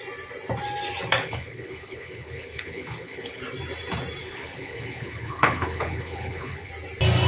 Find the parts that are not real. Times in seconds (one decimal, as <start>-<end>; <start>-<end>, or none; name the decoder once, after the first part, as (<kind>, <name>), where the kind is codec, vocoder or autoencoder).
1.2-3.4 (codec, HILCodec); 4.2-6.7